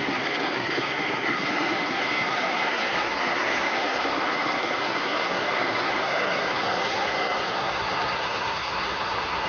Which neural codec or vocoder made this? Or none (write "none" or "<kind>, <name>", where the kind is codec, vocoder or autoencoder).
codec, SNAC